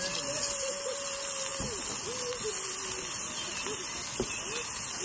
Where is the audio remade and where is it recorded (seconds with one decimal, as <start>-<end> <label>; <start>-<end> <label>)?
0.0-5.0 recorded